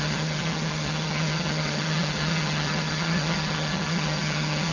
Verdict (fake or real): fake